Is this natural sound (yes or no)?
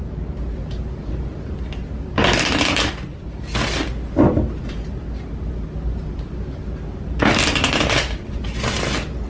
yes